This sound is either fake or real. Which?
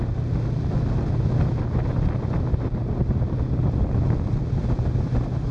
real